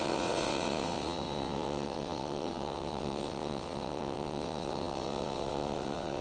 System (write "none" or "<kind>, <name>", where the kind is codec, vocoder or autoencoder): vocoder, WaveNeXt